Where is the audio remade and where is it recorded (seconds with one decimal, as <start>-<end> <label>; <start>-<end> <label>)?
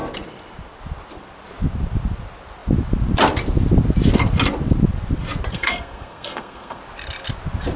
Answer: 0.0-5.5 recorded; 5.5-6.8 remade; 6.8-7.8 recorded